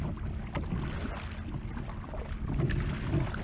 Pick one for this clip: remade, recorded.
recorded